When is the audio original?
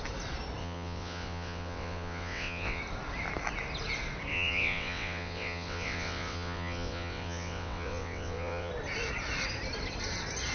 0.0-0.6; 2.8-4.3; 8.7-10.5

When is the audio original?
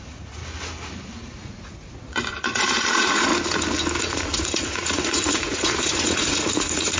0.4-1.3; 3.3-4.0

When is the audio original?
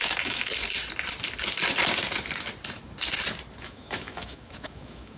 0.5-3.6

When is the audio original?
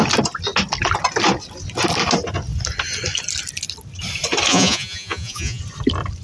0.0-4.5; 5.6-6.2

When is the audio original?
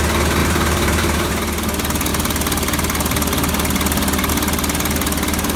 0.0-0.4; 1.3-5.6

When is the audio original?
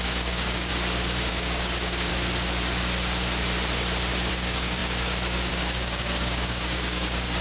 0.7-1.3; 2.1-4.3